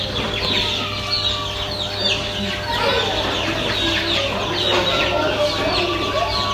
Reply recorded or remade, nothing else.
recorded